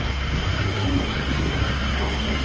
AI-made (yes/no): yes